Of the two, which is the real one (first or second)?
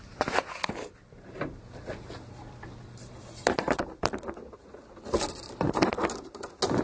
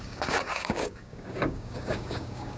first